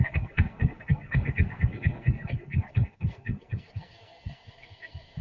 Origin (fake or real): fake